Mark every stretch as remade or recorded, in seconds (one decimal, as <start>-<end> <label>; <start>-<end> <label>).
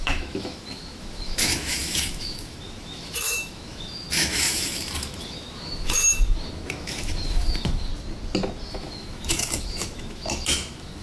0.0-7.9 remade; 7.9-8.7 recorded; 8.7-11.0 remade